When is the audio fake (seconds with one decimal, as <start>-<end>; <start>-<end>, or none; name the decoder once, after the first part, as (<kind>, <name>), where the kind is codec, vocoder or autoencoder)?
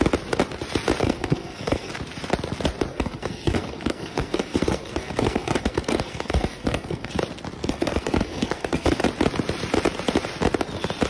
1.0-1.9 (codec, SNAC); 2.9-7.1; 7.6-9.0